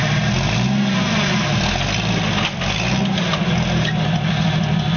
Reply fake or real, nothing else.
real